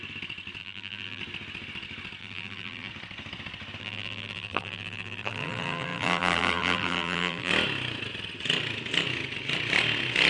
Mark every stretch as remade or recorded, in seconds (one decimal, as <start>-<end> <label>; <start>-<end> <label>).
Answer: 0.0-0.6 recorded; 0.6-1.2 remade; 1.2-2.2 recorded; 2.2-2.9 remade; 2.9-3.8 recorded; 3.8-7.5 remade; 7.5-10.3 recorded